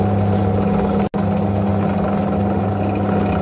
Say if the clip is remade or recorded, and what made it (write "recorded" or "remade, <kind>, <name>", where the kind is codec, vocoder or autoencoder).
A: recorded